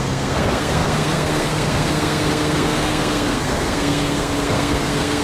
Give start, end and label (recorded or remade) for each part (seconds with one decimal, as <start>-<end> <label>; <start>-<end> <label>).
0.0-5.2 remade